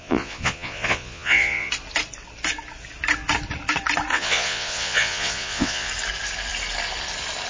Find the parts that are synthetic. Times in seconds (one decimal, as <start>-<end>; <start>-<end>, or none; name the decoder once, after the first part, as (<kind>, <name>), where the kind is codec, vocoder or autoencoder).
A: 0.0-1.7 (vocoder, Vocos); 4.1-5.9